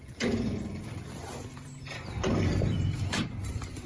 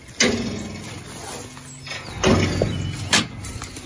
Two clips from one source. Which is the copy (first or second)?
first